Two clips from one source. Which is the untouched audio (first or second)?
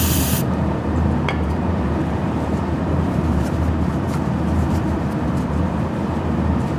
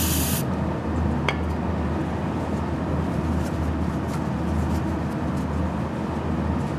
second